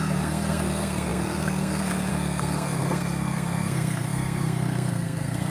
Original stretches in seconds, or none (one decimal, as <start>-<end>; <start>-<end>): none